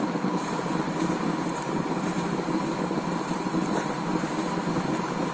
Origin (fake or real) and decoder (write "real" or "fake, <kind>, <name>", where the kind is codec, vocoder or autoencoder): real